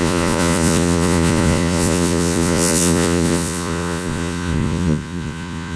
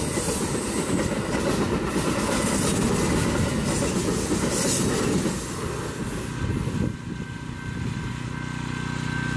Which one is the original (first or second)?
second